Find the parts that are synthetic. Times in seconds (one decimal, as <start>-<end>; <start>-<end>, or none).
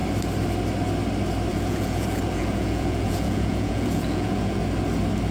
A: 1.5-4.6